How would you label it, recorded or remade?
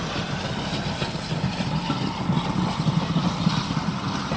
recorded